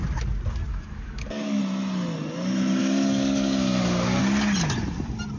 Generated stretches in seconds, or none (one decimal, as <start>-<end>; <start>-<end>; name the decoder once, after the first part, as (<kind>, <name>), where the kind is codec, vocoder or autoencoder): 0.7-1.6 (codec, DAC); 2.8-4.2